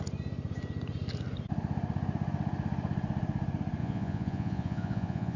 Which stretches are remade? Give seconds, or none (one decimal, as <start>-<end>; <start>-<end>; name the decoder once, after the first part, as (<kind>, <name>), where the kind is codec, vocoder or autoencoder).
3.8-5.4 (vocoder, Vocos)

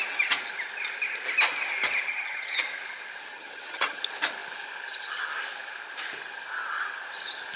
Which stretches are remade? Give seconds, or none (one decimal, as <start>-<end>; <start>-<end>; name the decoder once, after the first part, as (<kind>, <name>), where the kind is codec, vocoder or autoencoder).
2.1-2.6 (vocoder, HiFi-GAN); 3.3-4.0

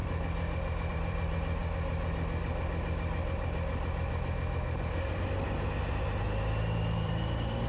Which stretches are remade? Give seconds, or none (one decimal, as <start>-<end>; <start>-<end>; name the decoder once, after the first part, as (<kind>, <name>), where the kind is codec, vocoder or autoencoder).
0.9-1.6 (vocoder, BigVGAN v2); 6.2-7.7

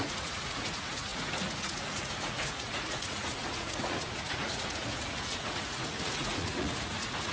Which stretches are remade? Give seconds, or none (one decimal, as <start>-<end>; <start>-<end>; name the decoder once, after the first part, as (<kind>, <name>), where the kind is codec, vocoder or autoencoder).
0.0-7.3 (vocoder, Vocos)

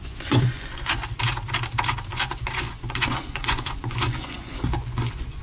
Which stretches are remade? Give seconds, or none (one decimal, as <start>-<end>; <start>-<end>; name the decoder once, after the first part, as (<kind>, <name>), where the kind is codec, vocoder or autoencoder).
0.0-1.0 (vocoder, Vocos); 2.1-5.4

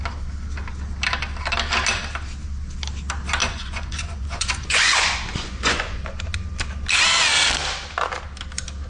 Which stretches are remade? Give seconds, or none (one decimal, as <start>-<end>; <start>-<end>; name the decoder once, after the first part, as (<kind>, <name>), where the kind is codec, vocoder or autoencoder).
3.4-6.0 (vocoder, Vocos)

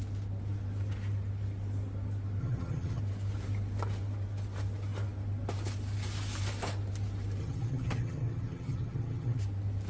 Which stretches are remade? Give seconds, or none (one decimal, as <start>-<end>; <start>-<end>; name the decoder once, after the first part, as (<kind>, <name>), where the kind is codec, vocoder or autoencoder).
2.4-3.0 (vocoder, HiFi-GAN); 7.4-9.4